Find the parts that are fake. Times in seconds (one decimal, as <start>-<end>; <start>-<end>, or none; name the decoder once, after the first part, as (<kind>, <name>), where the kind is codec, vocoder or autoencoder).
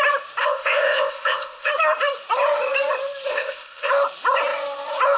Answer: 0.4-1.7 (codec, ZipCodec); 3.3-3.9